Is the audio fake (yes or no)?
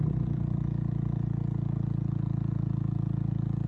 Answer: no